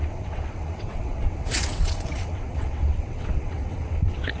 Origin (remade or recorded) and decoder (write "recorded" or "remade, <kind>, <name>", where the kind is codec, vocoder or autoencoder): remade, vocoder, WaveNeXt